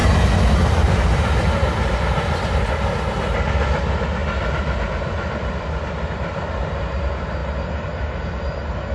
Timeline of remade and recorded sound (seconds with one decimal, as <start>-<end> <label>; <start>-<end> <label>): 0.0-8.9 recorded